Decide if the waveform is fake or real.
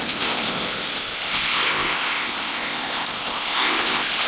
fake